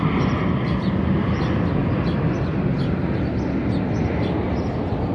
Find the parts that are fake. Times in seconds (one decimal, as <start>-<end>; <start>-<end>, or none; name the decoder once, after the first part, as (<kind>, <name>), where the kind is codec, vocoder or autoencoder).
none